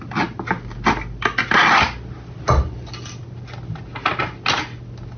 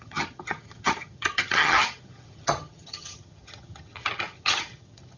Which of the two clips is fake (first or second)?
second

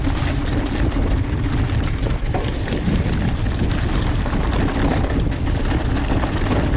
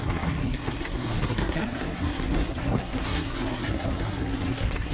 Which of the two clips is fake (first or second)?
second